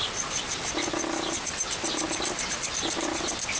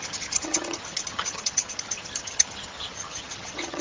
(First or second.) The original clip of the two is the first